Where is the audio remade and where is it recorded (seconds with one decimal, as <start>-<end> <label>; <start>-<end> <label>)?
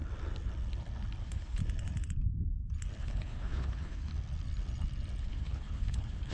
0.0-1.2 recorded; 1.2-1.6 remade; 1.6-3.0 recorded; 3.0-4.1 remade; 4.1-5.2 recorded; 5.2-6.3 remade